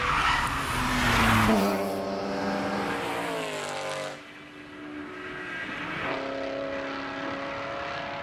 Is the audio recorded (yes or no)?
yes